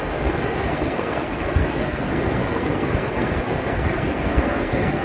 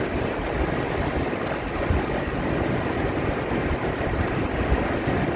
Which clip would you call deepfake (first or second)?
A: first